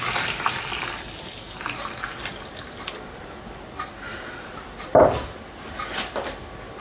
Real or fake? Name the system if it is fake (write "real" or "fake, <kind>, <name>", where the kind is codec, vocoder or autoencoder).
real